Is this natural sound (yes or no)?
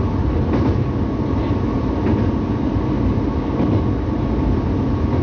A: yes